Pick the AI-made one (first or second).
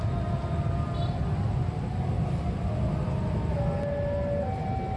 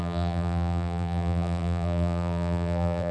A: second